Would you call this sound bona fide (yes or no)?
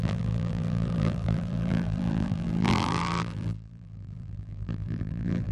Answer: no